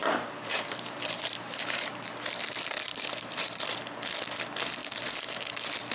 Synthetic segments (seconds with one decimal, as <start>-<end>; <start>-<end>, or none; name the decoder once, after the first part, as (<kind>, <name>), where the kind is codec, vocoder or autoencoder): 0.0-2.3 (vocoder, BigVGAN v2); 2.9-3.6